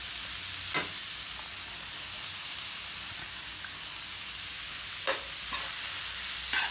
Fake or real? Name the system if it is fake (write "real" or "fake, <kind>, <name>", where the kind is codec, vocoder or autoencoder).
real